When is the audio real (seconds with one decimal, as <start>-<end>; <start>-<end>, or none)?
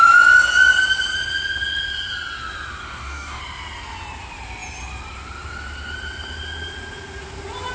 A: 0.0-2.8; 3.4-7.7